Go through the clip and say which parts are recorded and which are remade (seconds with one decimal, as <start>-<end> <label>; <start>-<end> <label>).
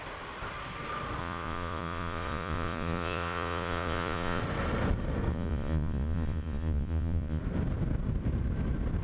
0.0-1.2 recorded; 1.2-4.4 remade; 4.4-5.3 recorded; 5.3-7.4 remade; 7.4-9.0 recorded